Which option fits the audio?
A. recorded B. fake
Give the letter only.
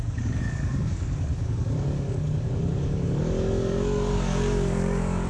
B